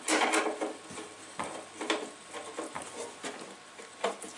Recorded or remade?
recorded